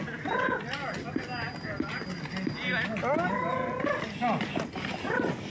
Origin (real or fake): real